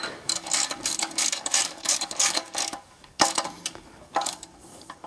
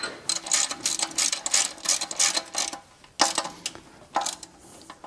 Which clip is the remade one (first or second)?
first